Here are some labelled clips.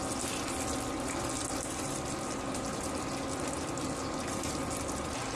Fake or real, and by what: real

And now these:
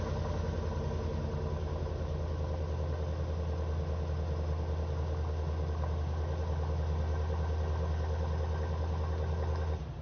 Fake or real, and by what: real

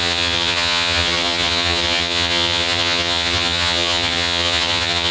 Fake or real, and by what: fake, vocoder, HiFi-GAN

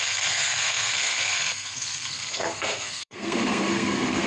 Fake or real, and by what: fake, codec, SNAC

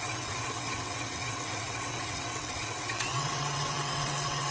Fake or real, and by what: fake, vocoder, WaveNeXt